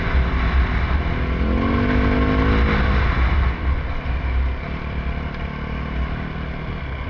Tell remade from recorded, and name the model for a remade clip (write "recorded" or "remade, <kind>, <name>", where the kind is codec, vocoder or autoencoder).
recorded